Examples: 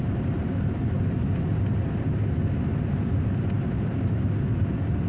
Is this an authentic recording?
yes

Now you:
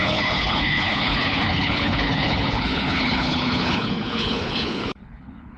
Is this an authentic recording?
no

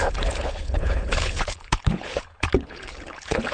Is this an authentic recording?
no